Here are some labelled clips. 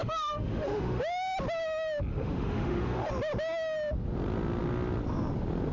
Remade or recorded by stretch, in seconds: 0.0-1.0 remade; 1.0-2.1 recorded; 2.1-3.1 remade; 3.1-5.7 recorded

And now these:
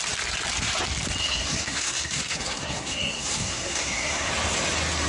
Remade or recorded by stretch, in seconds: 0.0-1.2 recorded; 1.2-4.3 remade; 4.3-5.1 recorded

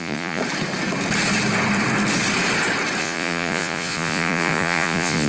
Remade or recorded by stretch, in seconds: 0.0-0.4 remade; 0.4-3.0 recorded; 3.0-5.3 remade

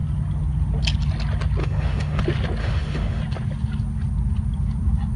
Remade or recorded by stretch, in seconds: 0.0-1.6 recorded; 1.6-2.2 remade; 2.2-2.6 recorded; 2.6-3.2 remade; 3.2-5.2 recorded

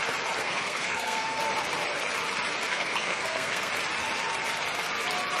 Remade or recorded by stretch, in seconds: 0.0-0.4 recorded; 0.4-1.4 remade; 1.4-2.7 recorded; 2.7-3.7 remade; 3.7-5.4 recorded

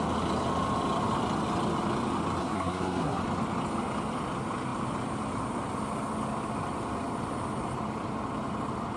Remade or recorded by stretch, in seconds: 0.0-2.4 recorded; 2.4-3.2 remade; 3.2-9.0 recorded